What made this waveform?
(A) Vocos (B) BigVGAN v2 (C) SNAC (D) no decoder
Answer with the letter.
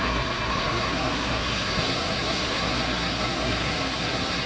C